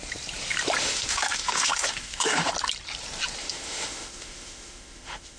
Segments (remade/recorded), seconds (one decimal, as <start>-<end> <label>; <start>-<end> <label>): 0.0-0.8 recorded; 0.8-2.5 remade; 2.5-3.4 recorded; 3.4-5.4 remade